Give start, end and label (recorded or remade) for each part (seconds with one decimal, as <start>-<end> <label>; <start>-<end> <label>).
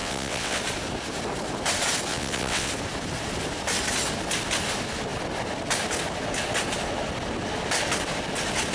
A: 0.0-0.6 remade; 0.6-2.1 recorded; 2.1-2.7 remade; 2.7-8.7 recorded